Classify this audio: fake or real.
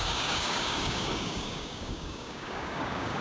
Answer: fake